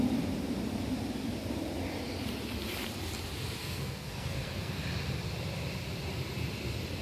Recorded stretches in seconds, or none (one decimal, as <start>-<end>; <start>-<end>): 0.0-3.6; 4.8-7.0